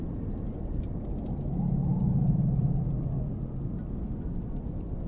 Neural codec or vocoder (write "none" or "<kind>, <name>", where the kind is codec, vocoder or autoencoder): none